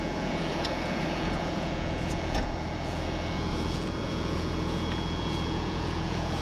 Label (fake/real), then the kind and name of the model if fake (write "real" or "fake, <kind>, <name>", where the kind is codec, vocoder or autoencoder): fake, vocoder, Vocos